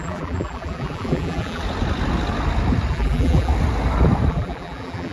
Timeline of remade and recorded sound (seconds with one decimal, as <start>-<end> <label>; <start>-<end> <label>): 0.0-1.6 remade; 1.6-2.9 recorded; 2.9-3.5 remade; 3.5-4.3 recorded; 4.3-5.1 remade